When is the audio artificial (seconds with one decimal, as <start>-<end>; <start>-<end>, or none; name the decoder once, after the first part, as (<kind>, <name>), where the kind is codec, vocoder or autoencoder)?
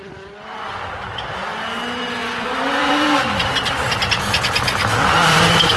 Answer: 2.2-5.8 (vocoder, BigVGAN v2)